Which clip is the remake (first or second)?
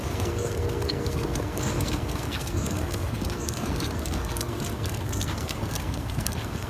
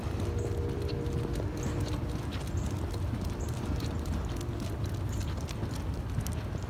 first